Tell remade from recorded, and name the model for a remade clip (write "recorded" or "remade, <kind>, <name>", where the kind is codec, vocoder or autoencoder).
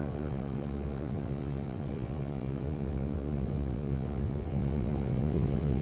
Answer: remade, vocoder, WaveNeXt